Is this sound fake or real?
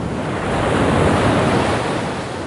real